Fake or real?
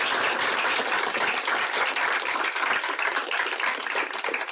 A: fake